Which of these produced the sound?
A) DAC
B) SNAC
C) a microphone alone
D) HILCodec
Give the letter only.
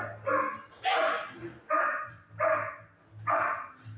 C